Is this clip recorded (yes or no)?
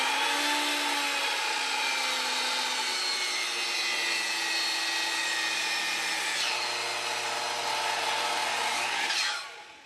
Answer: yes